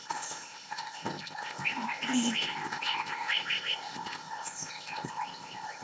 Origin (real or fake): fake